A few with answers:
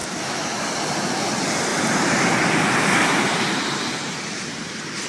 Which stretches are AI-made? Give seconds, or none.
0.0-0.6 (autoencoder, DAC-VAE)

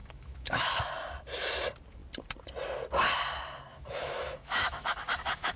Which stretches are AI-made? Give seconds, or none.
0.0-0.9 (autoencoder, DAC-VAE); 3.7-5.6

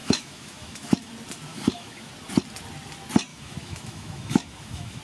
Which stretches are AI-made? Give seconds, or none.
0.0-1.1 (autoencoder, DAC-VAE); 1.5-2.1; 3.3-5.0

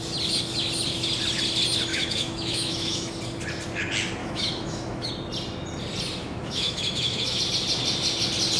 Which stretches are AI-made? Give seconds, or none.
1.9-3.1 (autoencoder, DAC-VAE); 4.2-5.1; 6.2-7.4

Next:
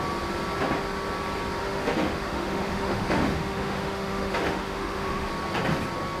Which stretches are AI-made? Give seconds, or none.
1.6-5.3 (autoencoder, DAC-VAE)